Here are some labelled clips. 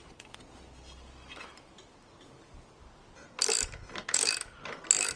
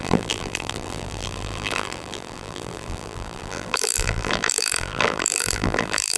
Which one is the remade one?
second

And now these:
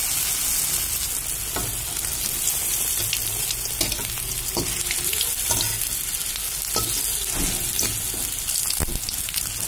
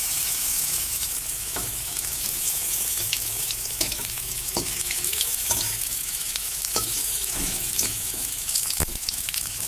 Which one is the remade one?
second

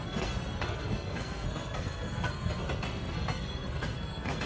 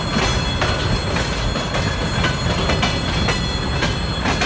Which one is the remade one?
first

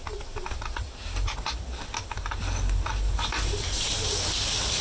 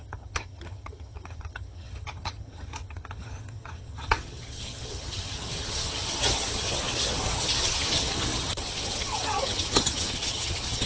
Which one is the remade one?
second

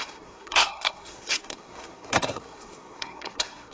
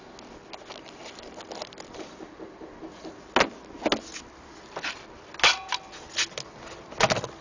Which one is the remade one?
first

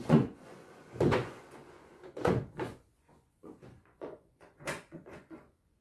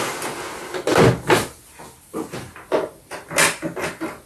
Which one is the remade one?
first